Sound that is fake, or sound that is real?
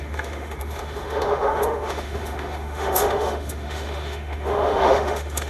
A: fake